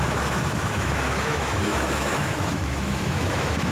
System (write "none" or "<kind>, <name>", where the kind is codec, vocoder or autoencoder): autoencoder, DAC-VAE